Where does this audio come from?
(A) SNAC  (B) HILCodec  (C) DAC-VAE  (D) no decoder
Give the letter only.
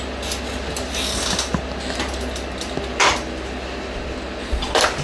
D